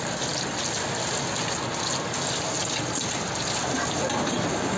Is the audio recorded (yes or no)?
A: yes